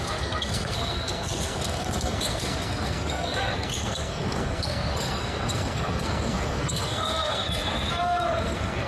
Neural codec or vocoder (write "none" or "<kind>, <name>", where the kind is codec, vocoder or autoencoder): codec, SNAC